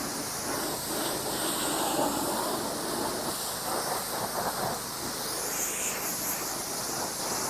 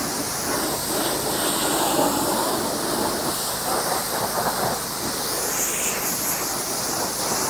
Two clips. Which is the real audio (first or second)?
first